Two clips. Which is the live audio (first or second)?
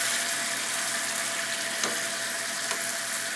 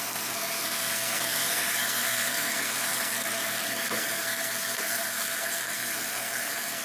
first